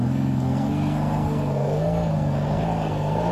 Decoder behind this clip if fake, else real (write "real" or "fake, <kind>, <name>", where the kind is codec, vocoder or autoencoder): fake, codec, SNAC